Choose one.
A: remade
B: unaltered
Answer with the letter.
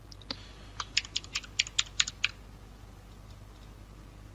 B